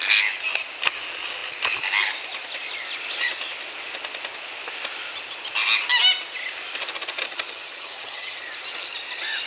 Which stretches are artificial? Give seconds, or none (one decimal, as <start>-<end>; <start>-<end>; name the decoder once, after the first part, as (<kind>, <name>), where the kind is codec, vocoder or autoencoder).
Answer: 7.3-8.4 (vocoder, HiFi-GAN)